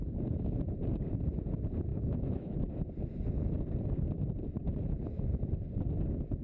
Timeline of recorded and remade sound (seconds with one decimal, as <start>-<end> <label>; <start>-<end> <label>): 0.0-1.9 recorded; 1.9-2.7 remade; 2.7-6.4 recorded